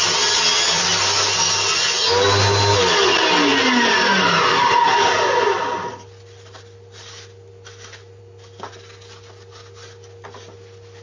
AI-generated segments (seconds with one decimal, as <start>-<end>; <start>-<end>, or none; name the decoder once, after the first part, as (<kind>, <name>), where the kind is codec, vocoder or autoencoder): none

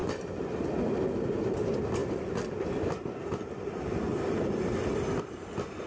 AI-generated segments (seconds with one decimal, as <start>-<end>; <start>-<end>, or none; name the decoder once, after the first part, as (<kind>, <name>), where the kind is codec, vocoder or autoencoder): 0.0-0.7 (vocoder, BigVGAN v2); 2.0-5.2